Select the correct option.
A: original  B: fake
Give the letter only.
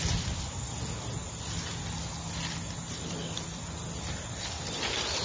A